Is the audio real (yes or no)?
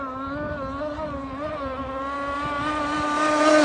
yes